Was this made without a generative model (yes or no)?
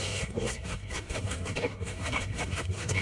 no